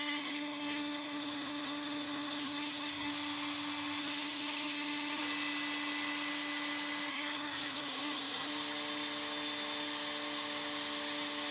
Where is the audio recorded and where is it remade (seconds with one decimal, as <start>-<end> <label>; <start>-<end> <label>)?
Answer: 0.0-3.1 remade; 3.1-4.0 recorded; 4.0-5.2 remade; 5.2-7.1 recorded; 7.1-8.5 remade; 8.5-11.5 recorded